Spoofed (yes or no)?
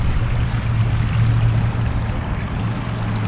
no